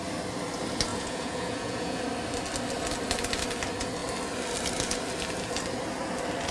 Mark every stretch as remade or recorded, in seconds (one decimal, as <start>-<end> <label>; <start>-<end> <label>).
0.0-0.9 recorded; 0.9-2.0 remade; 2.0-6.5 recorded